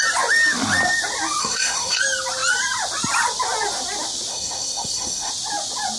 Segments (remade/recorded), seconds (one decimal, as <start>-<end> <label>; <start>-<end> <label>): 0.0-1.4 recorded; 1.4-2.0 remade; 2.0-4.3 recorded; 4.3-5.3 remade; 5.3-6.0 recorded